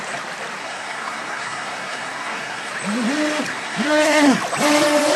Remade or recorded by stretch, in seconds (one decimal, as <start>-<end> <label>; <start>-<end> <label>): 0.0-0.6 recorded; 0.6-2.7 remade; 2.7-3.5 recorded; 3.5-4.4 remade; 4.4-5.2 recorded

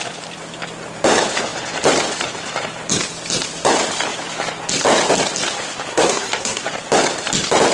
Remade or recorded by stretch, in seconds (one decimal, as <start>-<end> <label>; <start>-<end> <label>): 0.0-5.9 recorded; 5.9-6.6 remade; 6.6-7.7 recorded